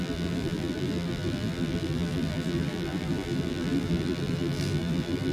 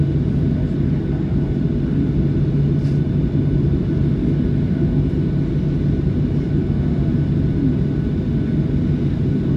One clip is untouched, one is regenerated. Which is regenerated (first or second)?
first